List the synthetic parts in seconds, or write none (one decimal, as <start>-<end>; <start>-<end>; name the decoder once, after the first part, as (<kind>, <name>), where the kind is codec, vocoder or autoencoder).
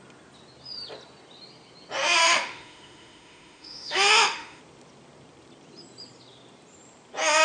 2.2-4.6 (autoencoder, DAC-VAE)